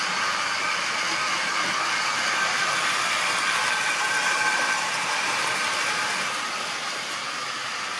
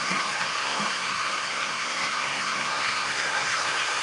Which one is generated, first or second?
second